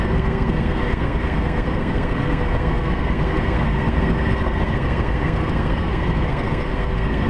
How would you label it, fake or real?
fake